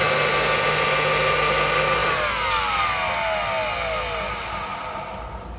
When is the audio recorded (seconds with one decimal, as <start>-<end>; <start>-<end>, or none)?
0.0-5.6

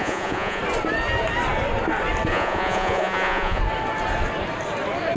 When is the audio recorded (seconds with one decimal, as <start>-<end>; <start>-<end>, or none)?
0.6-2.3; 3.6-5.2

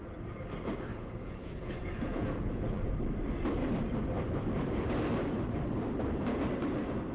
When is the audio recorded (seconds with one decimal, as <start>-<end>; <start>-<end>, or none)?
0.0-0.9; 2.9-7.1

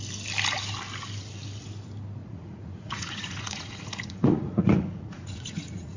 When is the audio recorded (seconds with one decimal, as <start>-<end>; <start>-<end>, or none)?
0.0-2.2